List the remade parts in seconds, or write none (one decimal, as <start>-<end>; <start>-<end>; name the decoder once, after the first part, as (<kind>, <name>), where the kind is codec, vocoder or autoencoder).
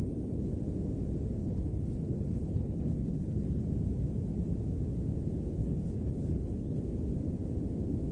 1.4-3.7 (codec, HILCodec); 5.6-6.8